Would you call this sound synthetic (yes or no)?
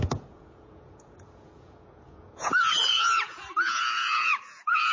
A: yes